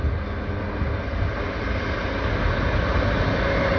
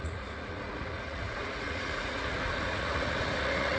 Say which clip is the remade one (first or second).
second